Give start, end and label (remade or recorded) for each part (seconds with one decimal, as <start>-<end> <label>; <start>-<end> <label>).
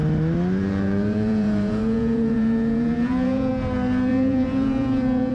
0.0-0.6 recorded; 0.6-3.5 remade; 3.5-4.1 recorded; 4.1-5.3 remade